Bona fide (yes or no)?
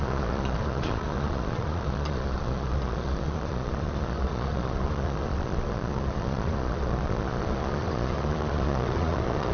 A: no